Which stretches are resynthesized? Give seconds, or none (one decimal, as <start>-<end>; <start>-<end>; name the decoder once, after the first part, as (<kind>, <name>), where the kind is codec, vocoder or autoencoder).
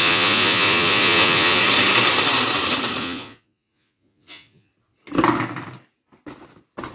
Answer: 0.0-1.6 (vocoder, Vocos); 3.0-4.7